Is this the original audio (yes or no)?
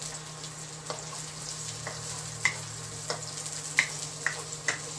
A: yes